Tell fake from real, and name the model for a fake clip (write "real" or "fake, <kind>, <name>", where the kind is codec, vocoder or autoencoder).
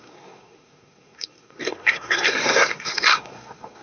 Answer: fake, codec, SNAC